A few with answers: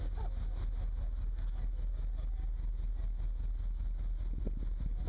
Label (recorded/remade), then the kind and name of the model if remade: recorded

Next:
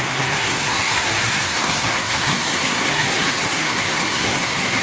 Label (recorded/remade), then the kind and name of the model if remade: remade, codec, SNAC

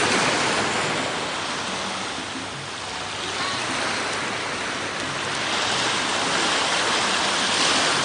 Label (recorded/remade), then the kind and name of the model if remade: recorded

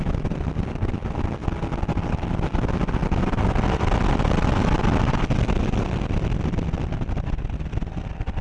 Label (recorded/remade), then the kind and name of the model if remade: recorded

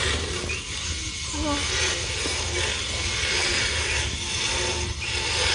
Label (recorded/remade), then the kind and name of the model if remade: recorded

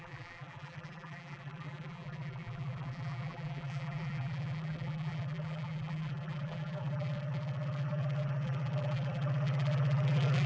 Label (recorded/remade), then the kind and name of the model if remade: remade, vocoder, BigVGAN v2